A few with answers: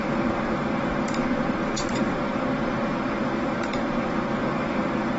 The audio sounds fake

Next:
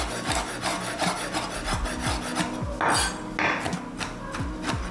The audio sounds real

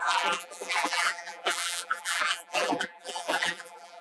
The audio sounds fake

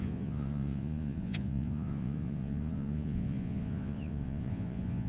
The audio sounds fake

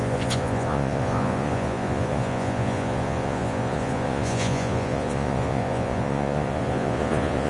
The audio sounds fake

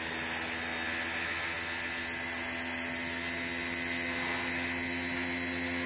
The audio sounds real